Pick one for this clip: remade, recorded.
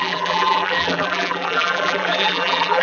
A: remade